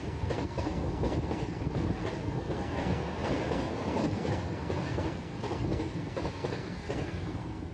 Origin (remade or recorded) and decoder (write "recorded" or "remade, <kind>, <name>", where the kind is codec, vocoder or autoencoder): remade, codec, SNAC